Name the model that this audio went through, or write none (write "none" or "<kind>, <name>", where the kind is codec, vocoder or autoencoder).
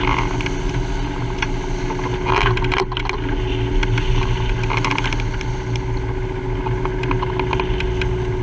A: none